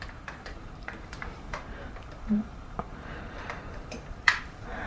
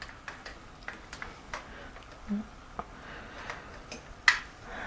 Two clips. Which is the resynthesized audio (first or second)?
first